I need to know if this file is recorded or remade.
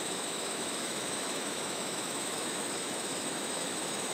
remade